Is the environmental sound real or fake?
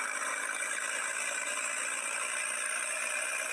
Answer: real